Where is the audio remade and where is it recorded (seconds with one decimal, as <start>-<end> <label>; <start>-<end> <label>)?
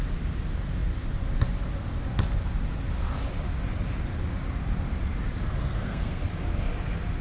0.0-5.6 recorded; 5.6-6.2 remade; 6.2-7.2 recorded